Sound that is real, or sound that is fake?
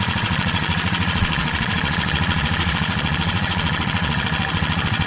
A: fake